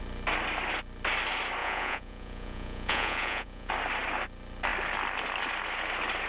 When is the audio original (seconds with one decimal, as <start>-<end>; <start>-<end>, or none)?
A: 0.0-1.6; 3.7-6.3